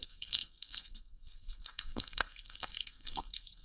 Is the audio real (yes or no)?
no